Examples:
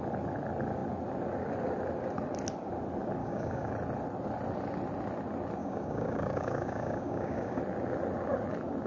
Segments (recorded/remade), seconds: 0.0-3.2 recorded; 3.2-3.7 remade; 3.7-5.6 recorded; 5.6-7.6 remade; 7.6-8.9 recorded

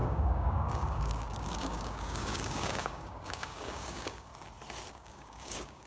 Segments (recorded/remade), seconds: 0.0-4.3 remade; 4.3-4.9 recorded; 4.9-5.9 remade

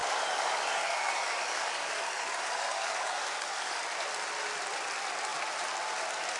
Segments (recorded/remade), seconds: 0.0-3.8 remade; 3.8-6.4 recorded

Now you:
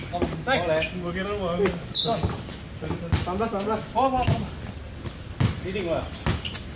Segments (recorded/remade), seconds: 0.0-1.8 recorded; 1.8-2.4 remade; 2.4-6.8 recorded